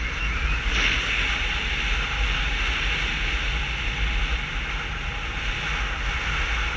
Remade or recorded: recorded